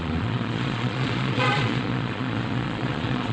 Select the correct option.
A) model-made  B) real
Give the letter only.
A